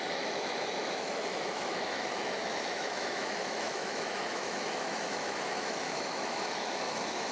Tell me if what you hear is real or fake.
fake